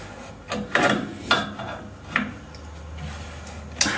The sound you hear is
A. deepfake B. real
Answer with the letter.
B